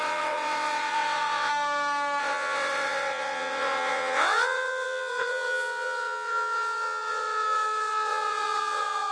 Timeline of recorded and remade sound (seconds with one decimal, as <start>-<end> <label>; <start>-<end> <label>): 0.0-1.5 remade; 1.5-2.2 recorded; 2.2-9.1 remade